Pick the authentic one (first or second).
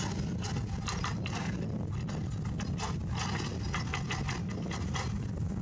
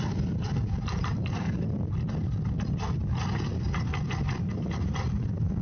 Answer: first